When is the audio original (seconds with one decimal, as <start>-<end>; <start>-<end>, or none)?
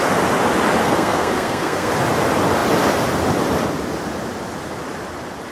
0.0-0.8; 1.9-5.5